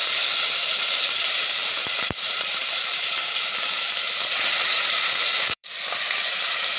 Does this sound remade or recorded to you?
remade